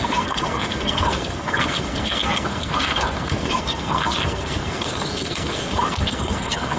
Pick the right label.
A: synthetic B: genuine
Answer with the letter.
A